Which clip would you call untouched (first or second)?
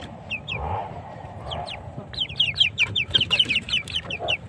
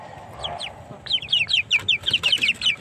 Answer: second